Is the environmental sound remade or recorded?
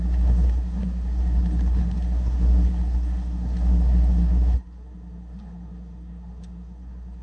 remade